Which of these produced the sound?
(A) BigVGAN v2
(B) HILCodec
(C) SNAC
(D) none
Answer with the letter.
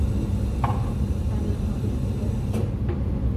D